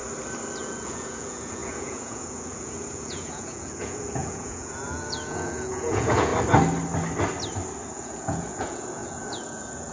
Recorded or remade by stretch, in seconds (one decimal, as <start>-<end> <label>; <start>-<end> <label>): 0.0-0.6 recorded; 0.6-6.3 remade; 6.3-7.9 recorded; 7.9-9.9 remade